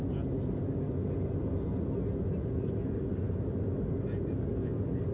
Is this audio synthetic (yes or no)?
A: no